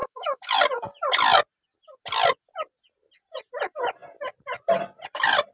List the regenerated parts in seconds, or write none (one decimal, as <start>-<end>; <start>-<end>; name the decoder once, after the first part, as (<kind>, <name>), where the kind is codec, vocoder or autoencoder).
0.0-0.6 (autoencoder, DAC-VAE)